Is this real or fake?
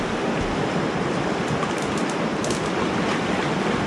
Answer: real